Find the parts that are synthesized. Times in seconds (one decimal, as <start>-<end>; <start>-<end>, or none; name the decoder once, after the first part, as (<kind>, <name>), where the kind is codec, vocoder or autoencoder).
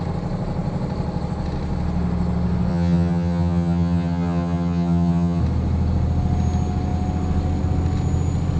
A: 2.7-5.4 (vocoder, HiFi-GAN)